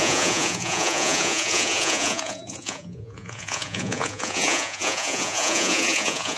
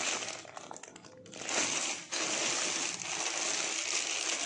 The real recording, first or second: second